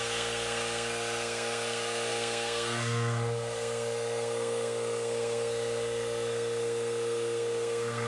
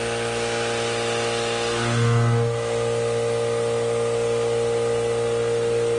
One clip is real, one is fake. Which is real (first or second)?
second